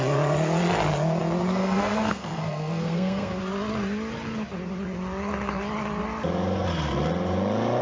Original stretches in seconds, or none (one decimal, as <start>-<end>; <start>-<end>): 0.0-1.6; 3.4-7.8